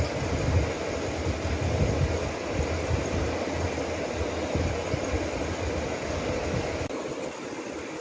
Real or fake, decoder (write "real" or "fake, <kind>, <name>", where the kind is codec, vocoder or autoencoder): real